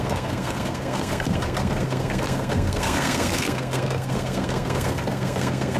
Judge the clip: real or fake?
fake